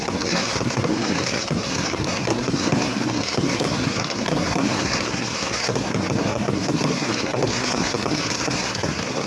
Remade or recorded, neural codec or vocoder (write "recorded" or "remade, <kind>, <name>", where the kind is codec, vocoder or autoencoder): remade, codec, SNAC